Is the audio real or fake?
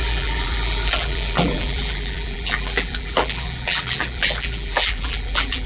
fake